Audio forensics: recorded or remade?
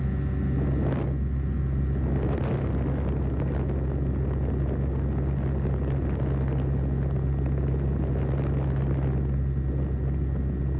recorded